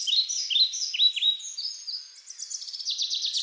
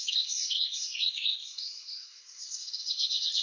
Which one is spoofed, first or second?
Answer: second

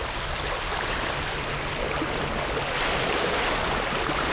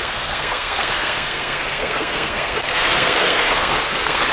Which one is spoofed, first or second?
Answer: second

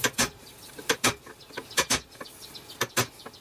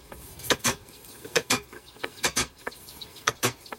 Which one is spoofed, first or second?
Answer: second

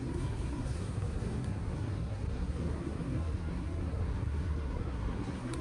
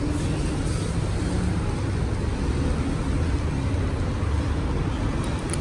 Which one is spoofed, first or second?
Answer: first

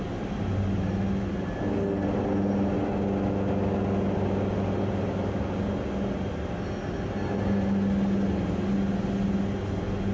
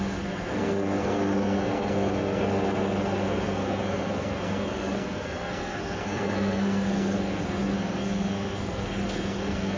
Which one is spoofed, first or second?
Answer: second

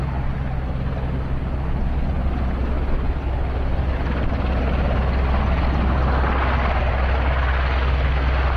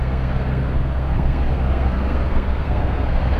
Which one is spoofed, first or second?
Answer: second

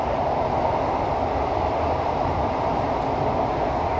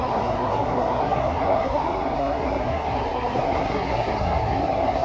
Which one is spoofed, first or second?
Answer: second